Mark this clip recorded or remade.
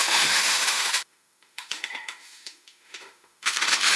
remade